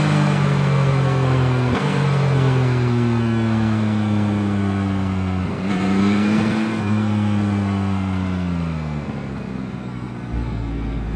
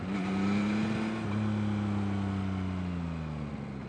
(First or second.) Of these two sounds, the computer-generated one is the first